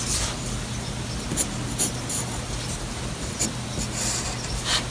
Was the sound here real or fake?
real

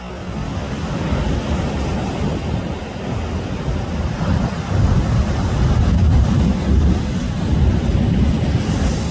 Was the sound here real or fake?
real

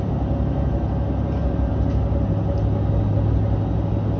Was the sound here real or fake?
real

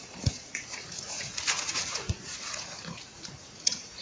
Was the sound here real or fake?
fake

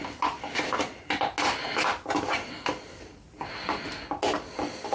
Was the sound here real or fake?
real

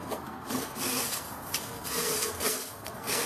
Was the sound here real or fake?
fake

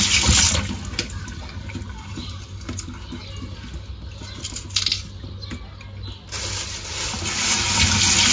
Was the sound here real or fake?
real